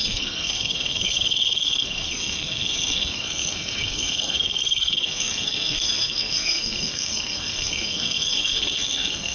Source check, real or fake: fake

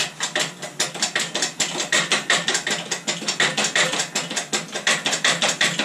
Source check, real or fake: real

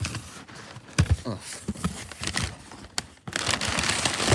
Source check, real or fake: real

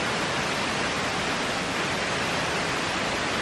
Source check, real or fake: real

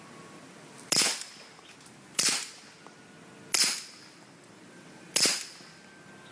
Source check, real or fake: real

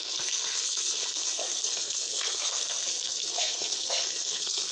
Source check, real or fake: fake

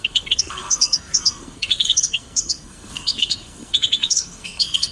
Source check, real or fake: fake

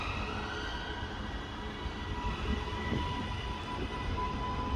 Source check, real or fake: real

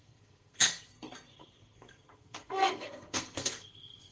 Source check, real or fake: fake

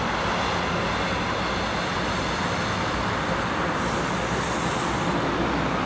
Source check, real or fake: real